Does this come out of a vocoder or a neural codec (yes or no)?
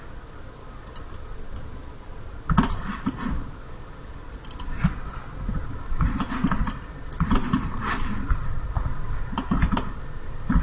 no